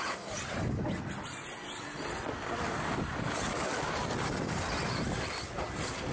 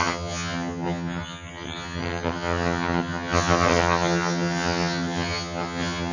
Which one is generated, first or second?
second